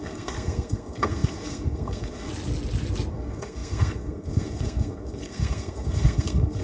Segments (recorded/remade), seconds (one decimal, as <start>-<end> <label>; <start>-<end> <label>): 0.0-2.3 remade; 2.3-3.1 recorded; 3.1-6.6 remade